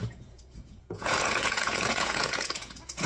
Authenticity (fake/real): fake